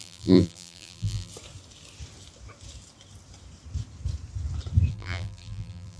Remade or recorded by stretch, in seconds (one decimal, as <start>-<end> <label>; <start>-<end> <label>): 0.0-1.3 remade; 1.3-4.9 recorded; 4.9-6.0 remade